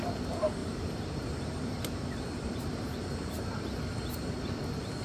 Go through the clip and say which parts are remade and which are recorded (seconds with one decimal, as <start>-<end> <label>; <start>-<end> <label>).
0.0-0.6 recorded; 0.6-3.6 remade; 3.6-5.0 recorded